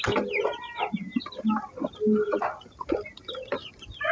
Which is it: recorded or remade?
recorded